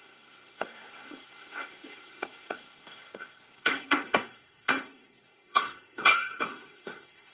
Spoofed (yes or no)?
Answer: yes